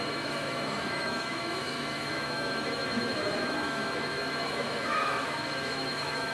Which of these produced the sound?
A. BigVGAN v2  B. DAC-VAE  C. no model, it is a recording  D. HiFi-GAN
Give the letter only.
B